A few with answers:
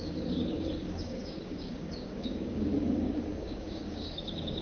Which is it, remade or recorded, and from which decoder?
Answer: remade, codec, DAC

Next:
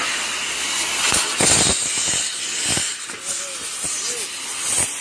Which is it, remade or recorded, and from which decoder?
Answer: recorded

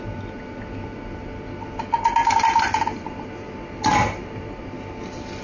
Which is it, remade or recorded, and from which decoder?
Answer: recorded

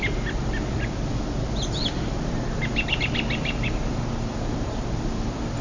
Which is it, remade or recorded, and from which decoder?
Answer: remade, vocoder, BigVGAN v2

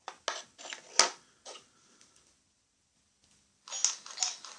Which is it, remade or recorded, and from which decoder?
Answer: recorded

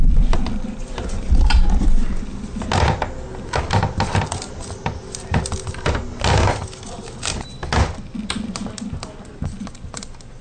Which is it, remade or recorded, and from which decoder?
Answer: recorded